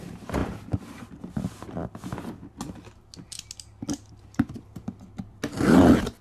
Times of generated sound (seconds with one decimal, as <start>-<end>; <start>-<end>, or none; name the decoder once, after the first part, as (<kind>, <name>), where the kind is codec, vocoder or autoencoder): none